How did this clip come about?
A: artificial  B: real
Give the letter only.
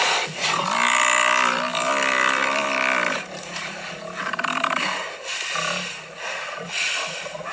B